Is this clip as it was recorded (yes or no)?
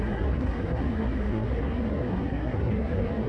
no